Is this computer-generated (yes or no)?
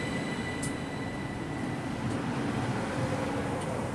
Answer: no